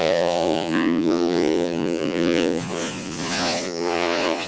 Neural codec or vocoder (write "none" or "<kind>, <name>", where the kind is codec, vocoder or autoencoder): vocoder, Vocos